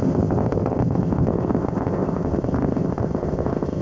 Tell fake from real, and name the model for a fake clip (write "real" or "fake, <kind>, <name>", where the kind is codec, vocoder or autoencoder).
fake, codec, ZipCodec